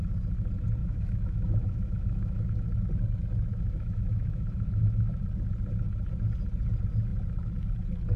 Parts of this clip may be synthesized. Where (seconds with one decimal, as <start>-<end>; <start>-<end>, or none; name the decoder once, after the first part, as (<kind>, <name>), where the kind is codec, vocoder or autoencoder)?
0.8-2.5 (autoencoder, DAC-VAE); 3.5-5.2